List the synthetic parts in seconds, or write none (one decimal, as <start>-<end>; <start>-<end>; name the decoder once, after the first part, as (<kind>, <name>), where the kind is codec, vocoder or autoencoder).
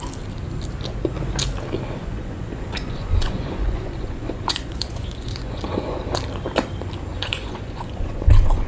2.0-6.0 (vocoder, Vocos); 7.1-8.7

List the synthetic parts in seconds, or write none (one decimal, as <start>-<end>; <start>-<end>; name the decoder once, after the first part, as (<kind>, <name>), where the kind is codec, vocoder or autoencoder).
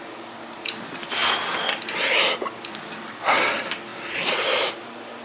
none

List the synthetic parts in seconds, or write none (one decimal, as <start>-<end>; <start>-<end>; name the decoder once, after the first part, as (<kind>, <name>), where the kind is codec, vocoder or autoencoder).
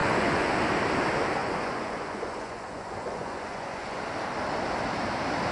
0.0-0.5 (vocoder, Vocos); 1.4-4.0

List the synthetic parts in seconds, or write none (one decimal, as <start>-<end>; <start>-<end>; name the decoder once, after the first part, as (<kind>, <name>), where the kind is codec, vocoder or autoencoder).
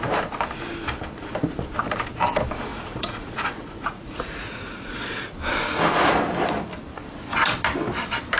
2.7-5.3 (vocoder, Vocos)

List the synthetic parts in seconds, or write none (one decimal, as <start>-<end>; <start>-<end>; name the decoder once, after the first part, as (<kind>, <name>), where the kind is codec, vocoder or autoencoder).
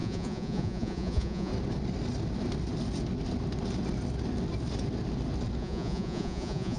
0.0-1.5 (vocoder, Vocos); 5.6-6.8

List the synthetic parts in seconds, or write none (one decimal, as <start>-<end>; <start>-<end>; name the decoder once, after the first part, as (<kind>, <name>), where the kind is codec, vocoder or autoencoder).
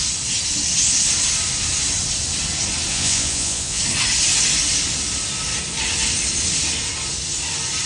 2.9-3.8 (vocoder, Vocos)